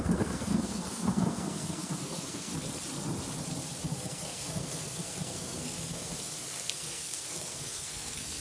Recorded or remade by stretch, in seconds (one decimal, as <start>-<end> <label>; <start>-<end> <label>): 0.0-2.5 remade; 2.5-3.8 recorded; 3.8-8.4 remade